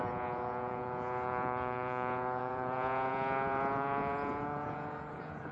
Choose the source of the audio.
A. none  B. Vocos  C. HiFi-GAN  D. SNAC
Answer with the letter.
B